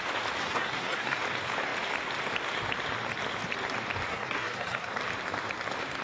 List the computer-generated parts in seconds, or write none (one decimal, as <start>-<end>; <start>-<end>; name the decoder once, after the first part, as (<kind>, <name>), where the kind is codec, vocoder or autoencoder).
0.4-1.2 (codec, SNAC); 4.1-4.9